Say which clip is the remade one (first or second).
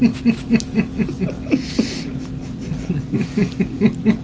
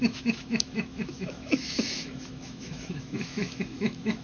second